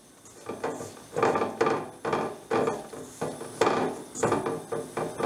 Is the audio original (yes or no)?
yes